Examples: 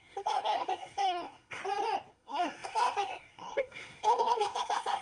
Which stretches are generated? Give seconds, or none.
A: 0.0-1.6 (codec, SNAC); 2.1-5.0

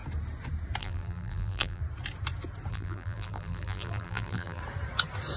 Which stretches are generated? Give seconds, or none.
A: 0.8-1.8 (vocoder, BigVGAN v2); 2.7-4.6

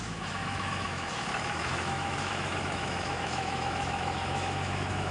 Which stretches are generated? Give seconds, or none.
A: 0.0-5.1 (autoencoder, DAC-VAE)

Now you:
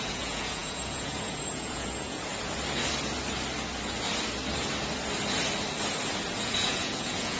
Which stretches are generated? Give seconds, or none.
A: 0.0-2.3 (vocoder, Vocos); 6.4-7.4